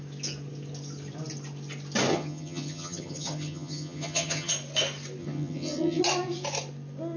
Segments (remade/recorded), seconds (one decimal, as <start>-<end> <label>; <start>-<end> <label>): 0.0-2.1 recorded; 2.1-4.5 remade; 4.5-5.2 recorded; 5.2-6.0 remade; 6.0-7.2 recorded